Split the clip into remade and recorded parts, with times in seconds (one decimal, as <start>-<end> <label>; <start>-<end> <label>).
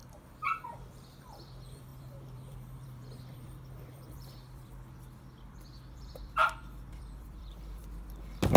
0.0-0.6 recorded; 0.6-7.8 remade; 7.8-8.6 recorded